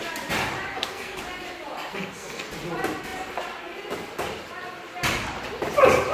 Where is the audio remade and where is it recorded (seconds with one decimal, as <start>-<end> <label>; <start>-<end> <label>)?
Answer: 0.0-0.7 recorded; 0.7-1.2 remade; 1.2-1.9 recorded; 1.9-2.5 remade; 2.5-6.1 recorded